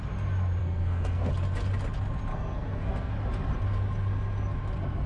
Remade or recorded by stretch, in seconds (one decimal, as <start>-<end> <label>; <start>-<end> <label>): 0.0-0.6 recorded; 0.6-1.3 remade; 1.3-2.3 recorded; 2.3-3.1 remade; 3.1-5.1 recorded